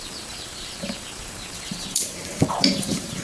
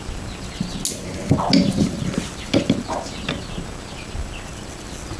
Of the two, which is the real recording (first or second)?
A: second